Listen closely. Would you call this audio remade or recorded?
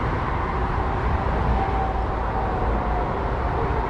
recorded